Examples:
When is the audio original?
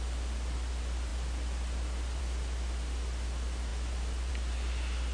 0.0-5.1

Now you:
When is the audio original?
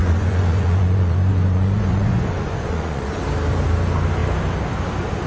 3.2-5.3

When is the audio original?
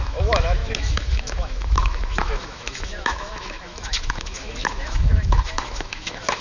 none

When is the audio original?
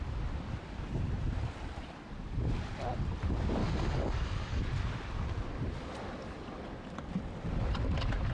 0.0-3.6; 4.6-8.3